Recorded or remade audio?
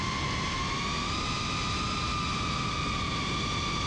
recorded